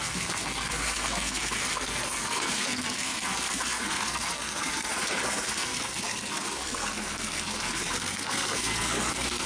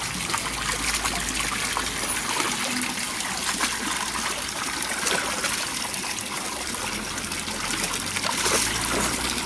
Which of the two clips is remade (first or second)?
first